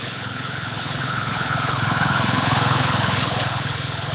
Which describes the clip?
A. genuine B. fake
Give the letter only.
B